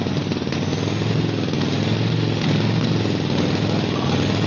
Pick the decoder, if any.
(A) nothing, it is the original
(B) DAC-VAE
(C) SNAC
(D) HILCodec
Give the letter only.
A